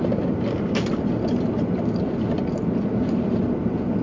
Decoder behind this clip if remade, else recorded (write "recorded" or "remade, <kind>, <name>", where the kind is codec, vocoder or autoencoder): recorded